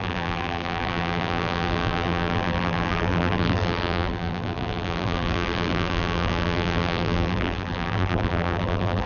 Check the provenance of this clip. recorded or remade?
remade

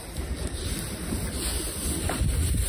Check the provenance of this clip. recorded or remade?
recorded